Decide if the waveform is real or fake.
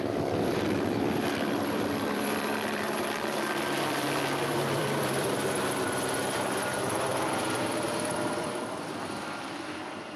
fake